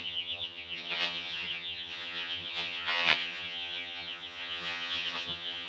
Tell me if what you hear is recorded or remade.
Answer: remade